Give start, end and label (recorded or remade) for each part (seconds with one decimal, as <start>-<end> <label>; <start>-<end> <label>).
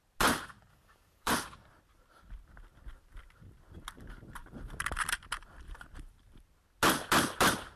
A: 0.0-0.7 recorded; 0.7-1.3 remade; 1.3-7.8 recorded